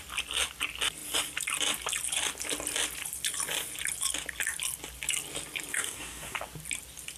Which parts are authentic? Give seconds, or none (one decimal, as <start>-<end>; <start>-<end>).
0.0-5.7; 6.4-7.2